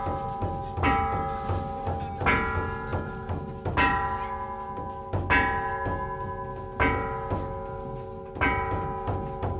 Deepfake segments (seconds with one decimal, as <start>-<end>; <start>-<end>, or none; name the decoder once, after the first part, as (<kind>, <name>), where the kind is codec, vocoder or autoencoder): none